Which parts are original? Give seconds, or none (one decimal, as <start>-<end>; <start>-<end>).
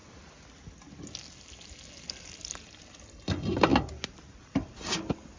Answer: 0.0-2.3; 3.7-4.3